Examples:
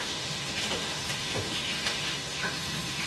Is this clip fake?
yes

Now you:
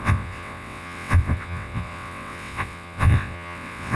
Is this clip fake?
yes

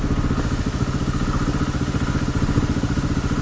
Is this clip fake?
no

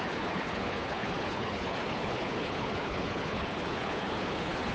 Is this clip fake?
yes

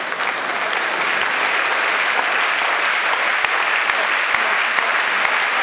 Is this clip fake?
no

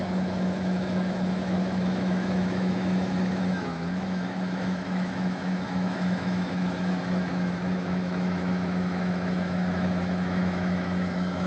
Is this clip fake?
yes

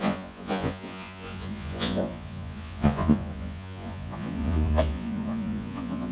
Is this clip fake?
yes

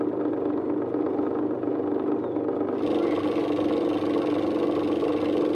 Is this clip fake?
no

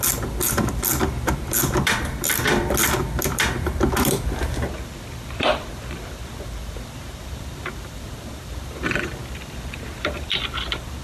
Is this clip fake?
yes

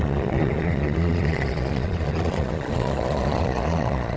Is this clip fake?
yes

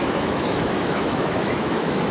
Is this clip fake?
yes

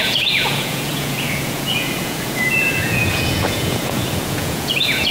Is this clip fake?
yes